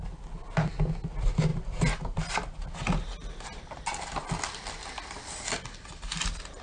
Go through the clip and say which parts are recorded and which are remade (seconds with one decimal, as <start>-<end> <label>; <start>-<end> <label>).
0.0-6.6 recorded